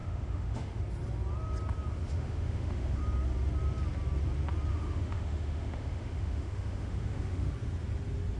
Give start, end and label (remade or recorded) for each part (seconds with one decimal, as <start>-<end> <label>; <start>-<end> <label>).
0.0-0.8 remade; 0.8-2.0 recorded; 2.0-3.0 remade; 3.0-4.7 recorded; 4.7-7.5 remade; 7.5-8.4 recorded